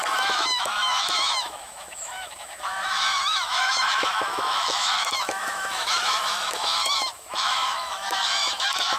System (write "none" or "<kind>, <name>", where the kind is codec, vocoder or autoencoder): autoencoder, DAC-VAE